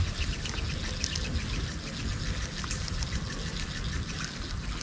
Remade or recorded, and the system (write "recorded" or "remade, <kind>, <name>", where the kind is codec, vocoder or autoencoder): recorded